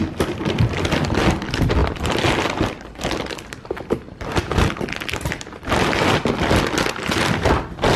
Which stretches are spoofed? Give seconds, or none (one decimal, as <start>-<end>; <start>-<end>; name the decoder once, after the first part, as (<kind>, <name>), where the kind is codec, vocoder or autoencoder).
none